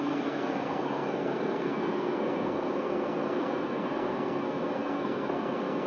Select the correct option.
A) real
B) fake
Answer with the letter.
B